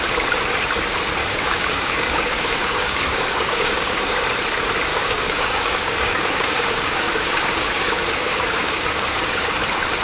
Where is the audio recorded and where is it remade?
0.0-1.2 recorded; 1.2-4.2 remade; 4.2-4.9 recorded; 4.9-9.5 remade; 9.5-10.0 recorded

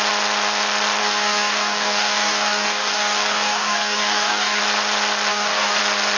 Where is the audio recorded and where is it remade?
0.0-1.0 recorded; 1.0-4.6 remade; 4.6-5.3 recorded; 5.3-5.8 remade; 5.8-6.2 recorded

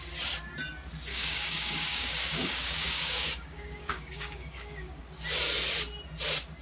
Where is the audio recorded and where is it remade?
0.0-1.1 recorded; 1.1-5.0 remade; 5.0-6.6 recorded